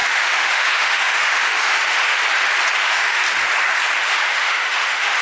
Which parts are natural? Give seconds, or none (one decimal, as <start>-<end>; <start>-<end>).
2.2-2.8; 3.2-4.0